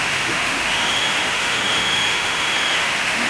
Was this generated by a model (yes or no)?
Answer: yes